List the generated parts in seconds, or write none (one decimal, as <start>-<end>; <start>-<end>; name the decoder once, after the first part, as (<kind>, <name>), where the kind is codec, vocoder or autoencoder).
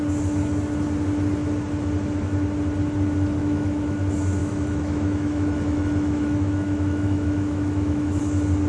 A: 3.4-4.0 (autoencoder, DAC-VAE); 4.4-8.2